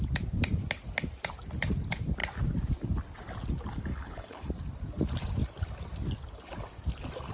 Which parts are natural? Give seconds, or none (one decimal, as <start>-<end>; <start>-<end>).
0.0-3.9; 4.5-7.3